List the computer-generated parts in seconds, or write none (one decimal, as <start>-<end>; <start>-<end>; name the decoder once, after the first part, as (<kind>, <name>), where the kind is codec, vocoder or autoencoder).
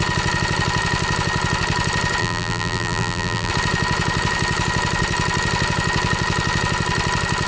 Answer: 2.2-3.5 (vocoder, BigVGAN v2)